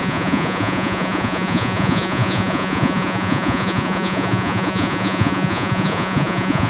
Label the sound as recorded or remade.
remade